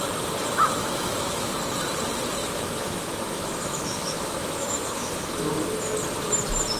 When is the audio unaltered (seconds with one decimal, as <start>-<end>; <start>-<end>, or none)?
0.0-0.8; 1.5-2.4; 5.5-6.8

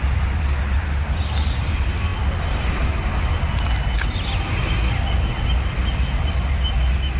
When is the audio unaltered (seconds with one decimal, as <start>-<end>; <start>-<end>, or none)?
0.0-7.2

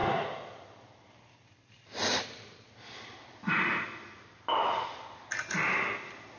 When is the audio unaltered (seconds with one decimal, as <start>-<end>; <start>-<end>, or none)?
3.5-6.4